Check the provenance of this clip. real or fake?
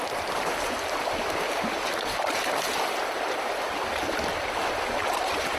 real